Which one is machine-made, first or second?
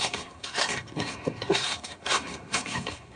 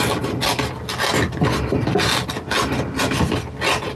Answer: first